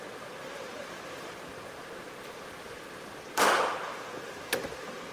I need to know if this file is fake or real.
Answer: real